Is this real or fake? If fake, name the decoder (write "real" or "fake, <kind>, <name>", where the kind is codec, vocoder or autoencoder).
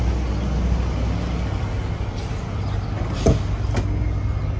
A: real